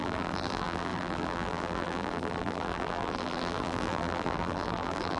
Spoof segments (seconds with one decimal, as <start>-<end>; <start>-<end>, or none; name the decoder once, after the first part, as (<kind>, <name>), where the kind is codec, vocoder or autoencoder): 0.0-5.2 (vocoder, BigVGAN v2)